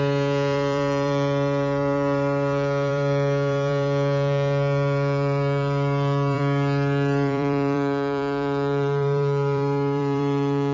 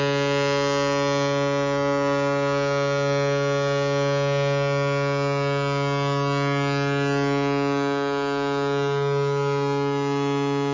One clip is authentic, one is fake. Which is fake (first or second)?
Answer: first